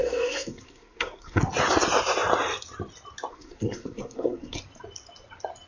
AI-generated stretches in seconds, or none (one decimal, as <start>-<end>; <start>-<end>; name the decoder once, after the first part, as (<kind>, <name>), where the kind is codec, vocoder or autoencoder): 0.0-1.4 (codec, SNAC); 3.3-4.6